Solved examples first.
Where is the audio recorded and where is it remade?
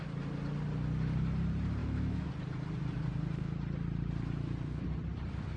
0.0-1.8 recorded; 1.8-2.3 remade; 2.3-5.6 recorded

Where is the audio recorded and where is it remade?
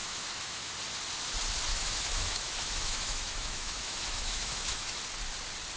0.0-0.7 remade; 0.7-1.7 recorded; 1.7-5.0 remade; 5.0-5.8 recorded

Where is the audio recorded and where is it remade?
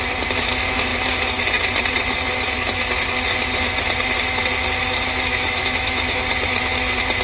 0.0-5.3 recorded; 5.3-6.2 remade; 6.2-7.2 recorded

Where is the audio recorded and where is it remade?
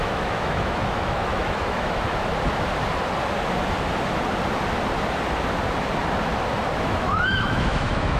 0.0-2.3 remade; 2.3-6.8 recorded; 6.8-8.2 remade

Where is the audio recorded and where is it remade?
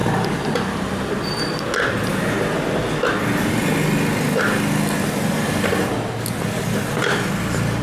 0.0-7.8 recorded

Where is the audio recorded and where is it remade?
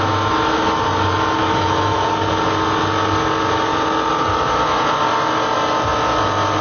0.0-1.4 recorded; 1.4-2.1 remade; 2.1-6.6 recorded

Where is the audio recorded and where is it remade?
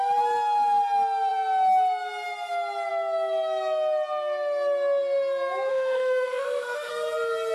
0.0-5.7 recorded; 5.7-6.9 remade; 6.9-7.5 recorded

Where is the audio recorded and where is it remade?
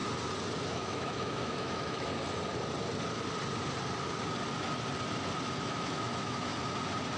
0.0-0.7 recorded; 0.7-2.1 remade; 2.1-5.6 recorded; 5.6-6.5 remade; 6.5-7.2 recorded